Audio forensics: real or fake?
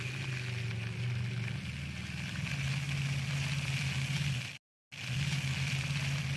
real